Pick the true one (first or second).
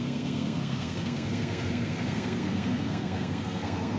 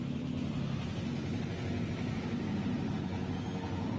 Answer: second